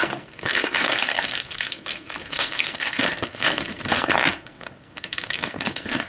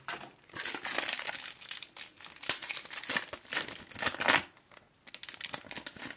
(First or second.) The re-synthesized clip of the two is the first